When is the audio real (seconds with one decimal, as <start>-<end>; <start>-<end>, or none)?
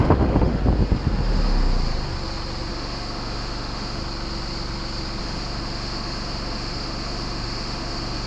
0.6-2.7; 4.0-5.2